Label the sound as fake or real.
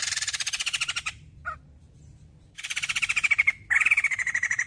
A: fake